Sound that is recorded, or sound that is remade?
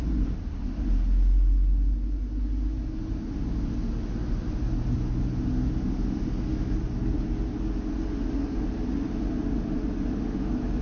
recorded